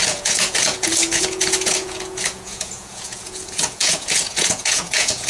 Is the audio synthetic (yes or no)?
yes